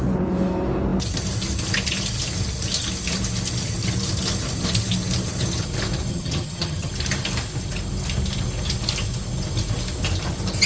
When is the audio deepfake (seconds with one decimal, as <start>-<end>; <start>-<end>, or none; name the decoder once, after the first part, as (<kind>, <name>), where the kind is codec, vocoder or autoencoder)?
6.1-6.9 (vocoder, HiFi-GAN)